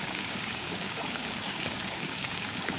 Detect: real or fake fake